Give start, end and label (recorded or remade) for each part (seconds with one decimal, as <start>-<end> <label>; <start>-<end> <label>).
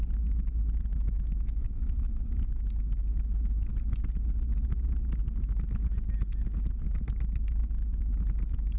0.0-0.9 recorded; 0.9-1.9 remade; 1.9-8.8 recorded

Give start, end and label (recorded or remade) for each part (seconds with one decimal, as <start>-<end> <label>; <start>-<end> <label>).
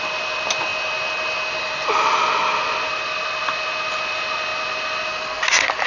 0.0-5.9 recorded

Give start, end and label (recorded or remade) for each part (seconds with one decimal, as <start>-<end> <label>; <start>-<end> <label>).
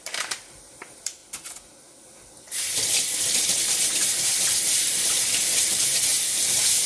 0.0-1.2 remade; 1.2-4.6 recorded; 4.6-6.1 remade; 6.1-6.9 recorded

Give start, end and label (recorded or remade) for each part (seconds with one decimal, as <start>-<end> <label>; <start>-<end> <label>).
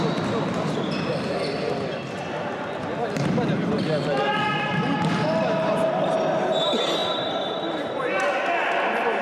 0.0-9.2 recorded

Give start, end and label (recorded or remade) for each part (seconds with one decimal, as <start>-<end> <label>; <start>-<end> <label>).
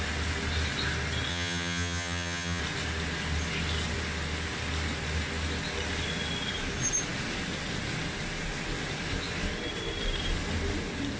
0.0-1.3 recorded; 1.3-2.6 remade; 2.6-11.2 recorded